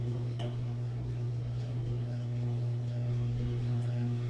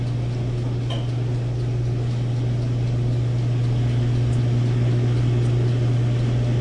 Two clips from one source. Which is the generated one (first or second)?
first